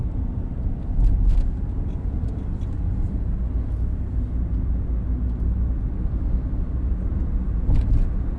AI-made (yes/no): no